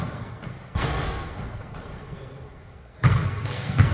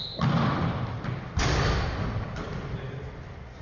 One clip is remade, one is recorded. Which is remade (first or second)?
first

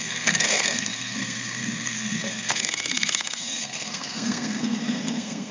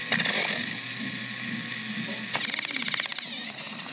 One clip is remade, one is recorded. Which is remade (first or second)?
first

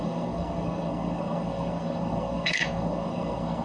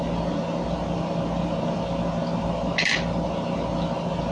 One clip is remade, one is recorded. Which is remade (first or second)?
first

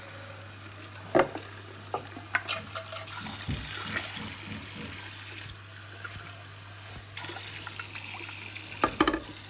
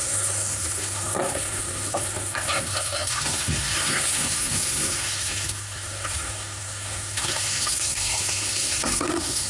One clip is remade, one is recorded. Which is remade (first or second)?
second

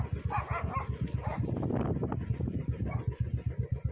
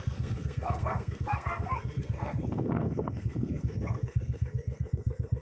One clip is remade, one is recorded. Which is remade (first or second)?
second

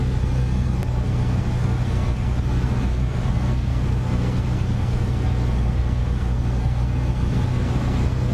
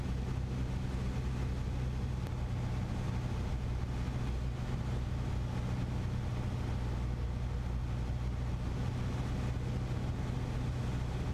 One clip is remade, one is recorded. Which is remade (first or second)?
first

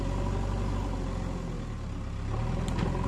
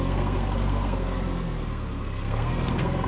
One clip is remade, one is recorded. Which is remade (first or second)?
second